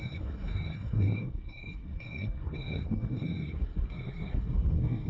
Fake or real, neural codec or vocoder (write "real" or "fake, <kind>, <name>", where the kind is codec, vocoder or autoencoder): fake, codec, SNAC